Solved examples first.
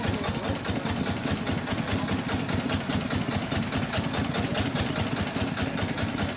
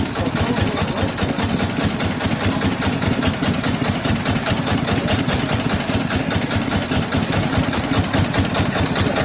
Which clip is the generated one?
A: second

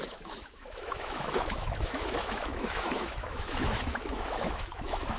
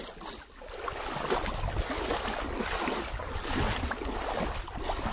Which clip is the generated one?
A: first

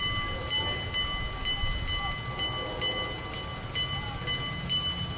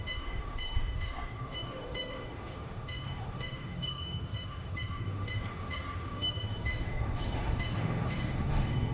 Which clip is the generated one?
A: second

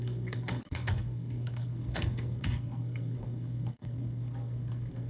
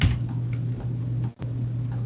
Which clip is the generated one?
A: first